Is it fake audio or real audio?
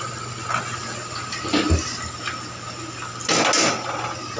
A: real